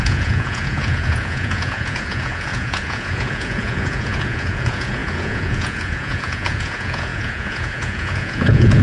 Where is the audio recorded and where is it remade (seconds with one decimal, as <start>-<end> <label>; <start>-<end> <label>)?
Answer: 0.0-8.8 remade